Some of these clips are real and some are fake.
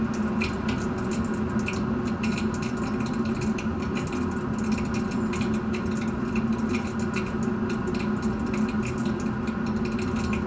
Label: real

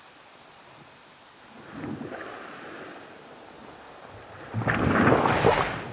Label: real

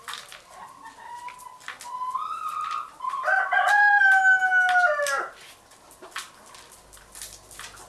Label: real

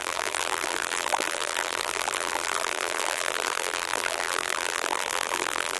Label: fake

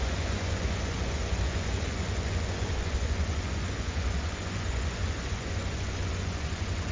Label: fake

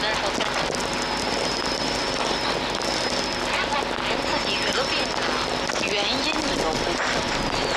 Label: real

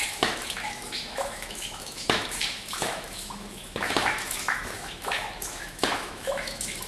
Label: fake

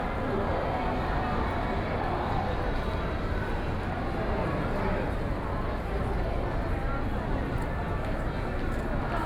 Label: real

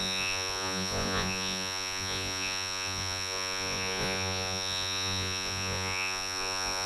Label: fake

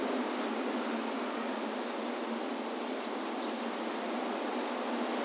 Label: real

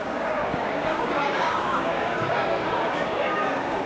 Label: fake